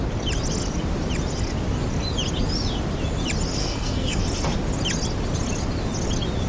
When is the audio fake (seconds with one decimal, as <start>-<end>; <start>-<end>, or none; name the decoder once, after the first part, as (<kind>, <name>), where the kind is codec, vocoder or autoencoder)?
3.6-4.2 (codec, SNAC)

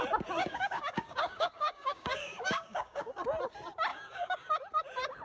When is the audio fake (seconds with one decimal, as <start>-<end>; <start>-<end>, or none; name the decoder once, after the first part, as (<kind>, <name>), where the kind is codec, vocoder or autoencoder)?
0.4-3.1 (codec, DAC); 3.9-4.5

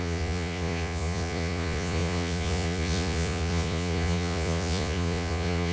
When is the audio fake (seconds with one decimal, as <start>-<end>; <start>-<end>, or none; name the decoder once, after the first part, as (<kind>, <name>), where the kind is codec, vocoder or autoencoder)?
0.0-5.7 (vocoder, Vocos)

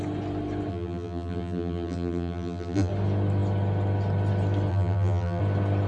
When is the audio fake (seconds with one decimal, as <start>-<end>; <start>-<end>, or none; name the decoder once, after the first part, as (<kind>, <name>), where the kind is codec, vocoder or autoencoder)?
0.7-2.9 (vocoder, BigVGAN v2); 4.7-5.4